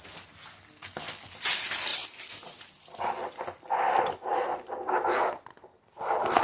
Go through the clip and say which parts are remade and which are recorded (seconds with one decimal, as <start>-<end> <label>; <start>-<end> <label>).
0.0-6.4 recorded